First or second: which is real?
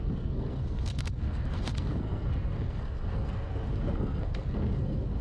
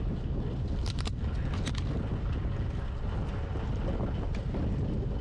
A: second